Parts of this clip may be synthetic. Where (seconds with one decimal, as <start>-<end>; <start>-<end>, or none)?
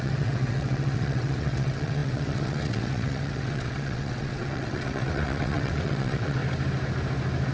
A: 0.0-6.4